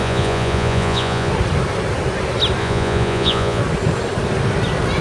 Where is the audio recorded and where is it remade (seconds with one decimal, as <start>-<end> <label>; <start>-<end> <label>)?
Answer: 0.0-1.3 remade; 1.3-2.6 recorded; 2.6-3.6 remade; 3.6-5.0 recorded

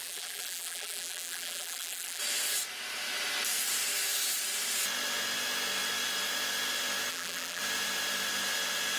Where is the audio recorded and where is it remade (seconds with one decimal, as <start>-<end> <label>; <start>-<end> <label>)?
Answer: 0.0-2.2 remade; 2.2-7.1 recorded; 7.1-7.6 remade; 7.6-9.0 recorded